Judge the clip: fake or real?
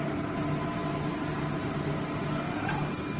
real